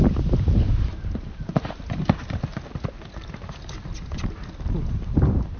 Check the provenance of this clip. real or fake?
real